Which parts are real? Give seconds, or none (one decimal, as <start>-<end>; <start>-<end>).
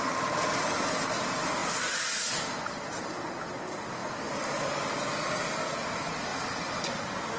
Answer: 0.0-4.0; 5.5-7.4